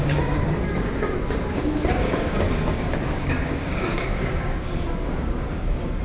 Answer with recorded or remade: remade